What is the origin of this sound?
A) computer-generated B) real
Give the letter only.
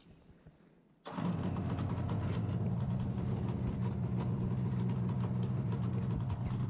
B